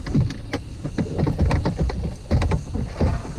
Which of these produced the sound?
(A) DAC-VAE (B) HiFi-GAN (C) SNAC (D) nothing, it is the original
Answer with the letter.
D